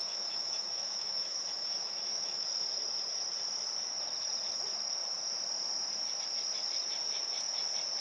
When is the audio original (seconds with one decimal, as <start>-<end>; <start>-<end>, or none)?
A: 2.5-8.0

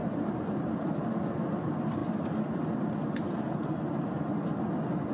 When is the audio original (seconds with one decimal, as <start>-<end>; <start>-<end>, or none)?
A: 1.1-5.1

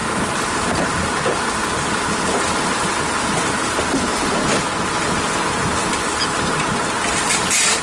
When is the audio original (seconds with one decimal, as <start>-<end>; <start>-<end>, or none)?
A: 0.0-7.8

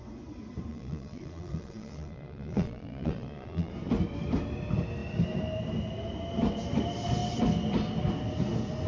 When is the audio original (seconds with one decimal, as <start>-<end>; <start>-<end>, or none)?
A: 0.0-0.7; 3.7-8.9